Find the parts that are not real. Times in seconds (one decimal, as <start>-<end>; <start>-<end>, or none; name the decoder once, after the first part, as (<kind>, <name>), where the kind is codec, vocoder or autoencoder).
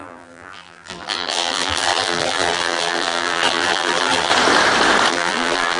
0.0-4.3 (vocoder, BigVGAN v2); 5.1-5.8